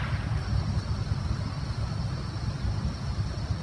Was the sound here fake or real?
real